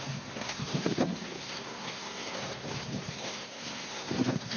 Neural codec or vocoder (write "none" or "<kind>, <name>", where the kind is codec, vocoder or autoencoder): codec, SNAC